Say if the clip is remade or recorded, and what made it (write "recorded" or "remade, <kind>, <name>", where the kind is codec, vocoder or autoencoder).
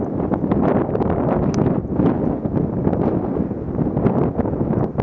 recorded